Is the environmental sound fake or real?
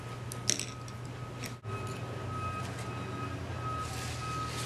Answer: real